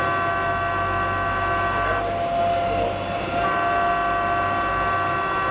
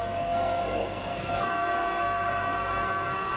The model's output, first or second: second